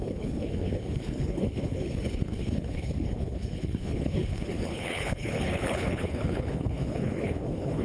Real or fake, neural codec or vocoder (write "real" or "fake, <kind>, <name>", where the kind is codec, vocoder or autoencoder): fake, codec, HILCodec